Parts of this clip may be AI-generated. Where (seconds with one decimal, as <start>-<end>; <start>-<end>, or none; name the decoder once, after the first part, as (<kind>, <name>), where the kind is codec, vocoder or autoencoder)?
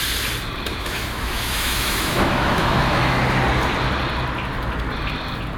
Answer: 0.7-3.2 (autoencoder, DAC-VAE)